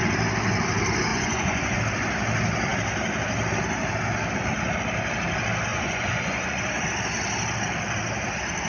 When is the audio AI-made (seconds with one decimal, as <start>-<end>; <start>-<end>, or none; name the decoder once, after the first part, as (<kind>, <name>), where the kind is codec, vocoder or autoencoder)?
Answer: 1.1-1.8 (vocoder, Vocos); 5.7-6.6